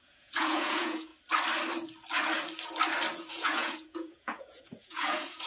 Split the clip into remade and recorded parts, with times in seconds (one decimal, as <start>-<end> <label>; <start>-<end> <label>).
0.0-1.1 remade; 1.1-3.3 recorded; 3.3-5.5 remade